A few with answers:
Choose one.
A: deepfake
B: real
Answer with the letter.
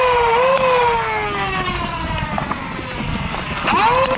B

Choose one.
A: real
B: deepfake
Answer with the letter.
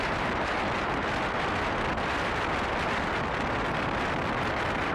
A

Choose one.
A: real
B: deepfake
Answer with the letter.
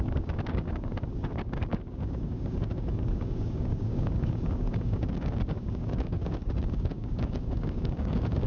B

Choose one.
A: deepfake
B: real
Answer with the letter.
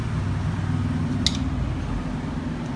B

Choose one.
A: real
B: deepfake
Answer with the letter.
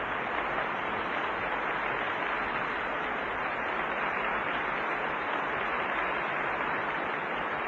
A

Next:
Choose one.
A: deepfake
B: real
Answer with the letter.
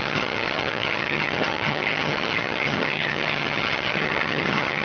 A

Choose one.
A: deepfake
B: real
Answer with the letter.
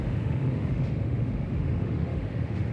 A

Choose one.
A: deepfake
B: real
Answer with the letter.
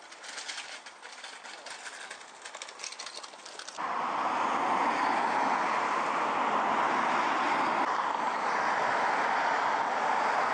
B